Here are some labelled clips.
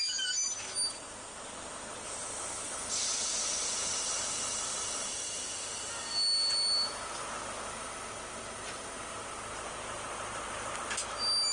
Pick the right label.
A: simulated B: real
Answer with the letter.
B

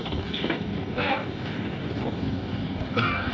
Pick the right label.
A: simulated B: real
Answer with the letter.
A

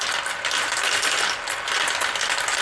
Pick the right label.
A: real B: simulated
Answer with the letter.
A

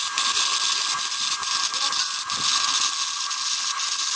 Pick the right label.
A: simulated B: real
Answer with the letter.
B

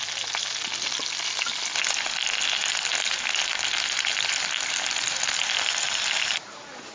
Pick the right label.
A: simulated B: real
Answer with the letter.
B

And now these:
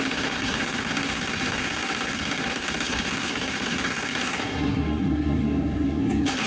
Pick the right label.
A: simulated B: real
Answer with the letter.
A